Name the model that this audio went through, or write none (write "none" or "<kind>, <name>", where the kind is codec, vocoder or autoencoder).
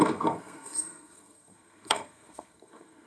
codec, SNAC